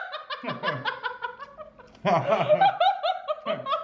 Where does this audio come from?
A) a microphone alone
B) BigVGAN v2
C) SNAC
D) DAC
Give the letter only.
A